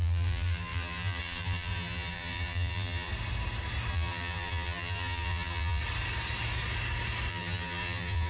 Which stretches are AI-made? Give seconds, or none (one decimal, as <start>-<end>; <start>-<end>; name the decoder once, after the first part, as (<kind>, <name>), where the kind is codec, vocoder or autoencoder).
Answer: 0.0-3.1 (vocoder, BigVGAN v2); 3.9-5.8; 7.3-8.3